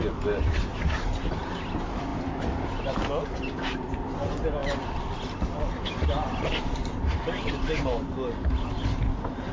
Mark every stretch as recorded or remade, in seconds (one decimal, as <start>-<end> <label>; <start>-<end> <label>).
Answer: 0.0-4.6 recorded; 4.6-7.5 remade; 7.5-9.5 recorded

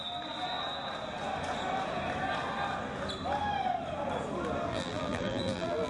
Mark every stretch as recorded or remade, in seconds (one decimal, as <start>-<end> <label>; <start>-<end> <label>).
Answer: 0.0-4.7 recorded; 4.7-5.9 remade

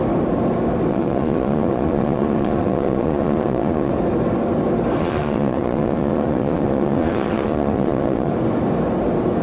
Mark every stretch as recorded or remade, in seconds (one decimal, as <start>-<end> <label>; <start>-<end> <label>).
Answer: 0.0-0.9 recorded; 0.9-3.9 remade; 3.9-5.0 recorded; 5.0-8.3 remade; 8.3-9.4 recorded

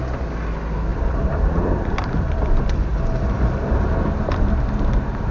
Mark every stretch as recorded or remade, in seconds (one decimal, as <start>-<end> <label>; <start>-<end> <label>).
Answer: 0.0-0.9 recorded; 0.9-2.4 remade; 2.4-2.9 recorded; 2.9-4.8 remade; 4.8-5.3 recorded

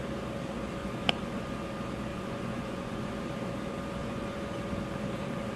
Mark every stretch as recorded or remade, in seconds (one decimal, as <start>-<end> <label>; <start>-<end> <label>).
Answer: 0.0-0.8 recorded; 0.8-1.5 remade; 1.5-2.1 recorded; 2.1-3.1 remade; 3.1-4.0 recorded; 4.0-4.7 remade; 4.7-5.6 recorded

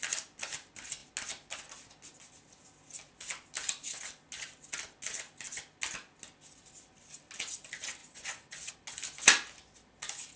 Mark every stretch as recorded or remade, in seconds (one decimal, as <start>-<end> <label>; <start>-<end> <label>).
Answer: 0.0-8.0 recorded; 8.0-8.7 remade; 8.7-10.4 recorded

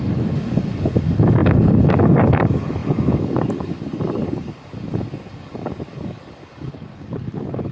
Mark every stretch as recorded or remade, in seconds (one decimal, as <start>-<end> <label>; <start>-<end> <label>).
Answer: 0.0-7.7 remade

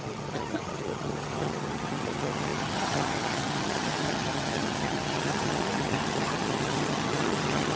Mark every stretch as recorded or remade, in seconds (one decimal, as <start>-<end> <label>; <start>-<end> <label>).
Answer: 0.0-7.8 remade